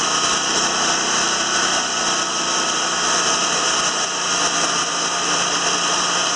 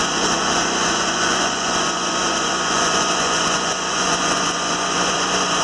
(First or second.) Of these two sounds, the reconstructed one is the second